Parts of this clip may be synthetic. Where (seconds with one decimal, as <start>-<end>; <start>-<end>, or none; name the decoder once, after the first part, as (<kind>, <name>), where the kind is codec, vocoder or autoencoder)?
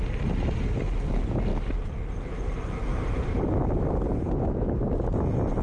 2.9-4.9 (vocoder, BigVGAN v2)